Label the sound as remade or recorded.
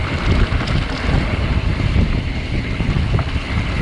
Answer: remade